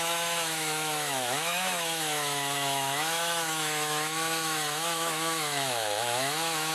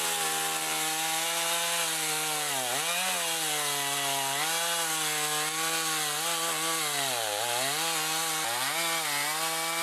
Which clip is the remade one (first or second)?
first